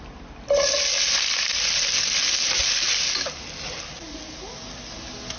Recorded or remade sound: recorded